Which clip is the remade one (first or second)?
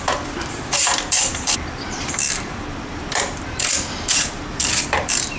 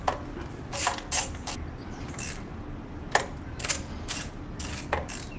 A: first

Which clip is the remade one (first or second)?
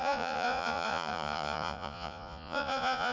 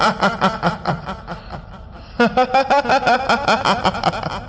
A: first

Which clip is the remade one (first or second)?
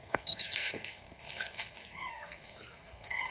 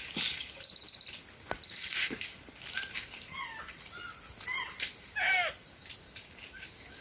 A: first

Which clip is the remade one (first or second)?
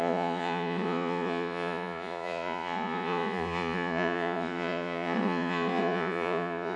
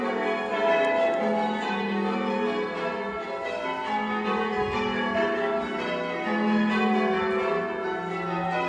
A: first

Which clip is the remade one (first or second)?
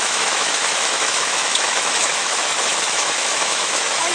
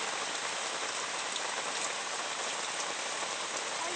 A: first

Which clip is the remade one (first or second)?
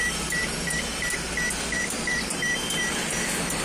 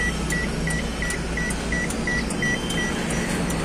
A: first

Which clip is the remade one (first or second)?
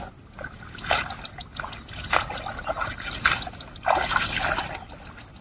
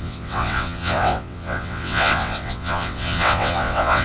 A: second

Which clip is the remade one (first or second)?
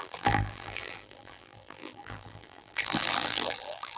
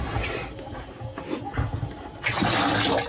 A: first